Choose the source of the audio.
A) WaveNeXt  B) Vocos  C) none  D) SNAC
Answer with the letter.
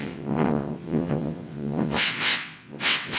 A